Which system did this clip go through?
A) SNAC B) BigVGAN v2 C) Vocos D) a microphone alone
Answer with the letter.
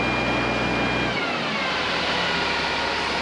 D